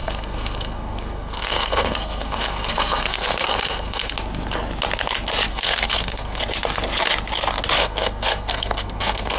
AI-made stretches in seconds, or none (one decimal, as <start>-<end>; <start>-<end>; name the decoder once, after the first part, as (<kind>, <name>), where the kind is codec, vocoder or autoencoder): 0.0-4.1 (codec, SNAC); 5.5-6.4; 7.8-9.4